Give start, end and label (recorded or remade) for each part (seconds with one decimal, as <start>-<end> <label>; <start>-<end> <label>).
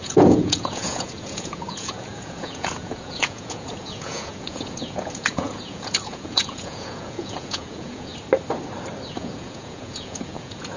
0.0-8.1 remade; 8.1-9.1 recorded; 9.1-10.8 remade